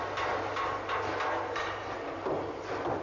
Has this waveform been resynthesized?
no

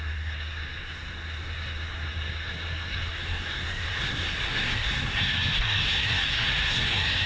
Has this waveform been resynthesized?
yes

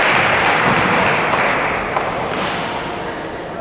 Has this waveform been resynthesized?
no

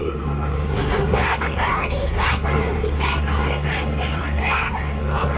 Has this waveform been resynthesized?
yes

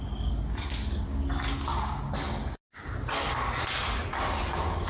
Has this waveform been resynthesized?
no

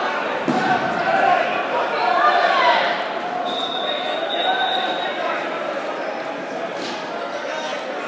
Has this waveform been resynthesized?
no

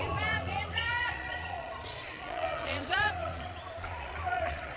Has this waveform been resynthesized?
yes